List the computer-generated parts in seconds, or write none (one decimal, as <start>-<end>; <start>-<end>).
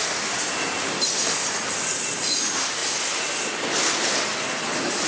0.0-2.8